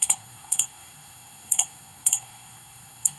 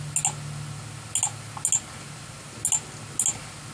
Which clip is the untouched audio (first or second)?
second